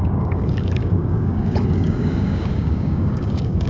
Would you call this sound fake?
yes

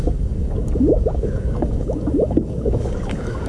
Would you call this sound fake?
yes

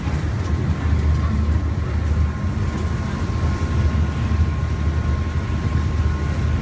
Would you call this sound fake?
no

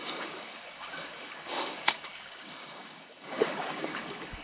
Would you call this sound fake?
yes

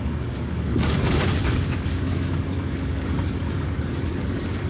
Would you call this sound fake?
yes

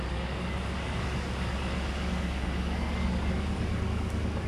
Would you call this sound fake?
yes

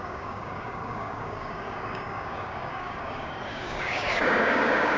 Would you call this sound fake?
yes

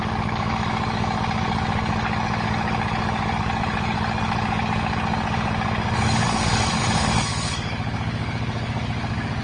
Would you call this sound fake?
yes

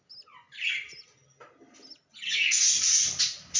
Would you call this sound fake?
no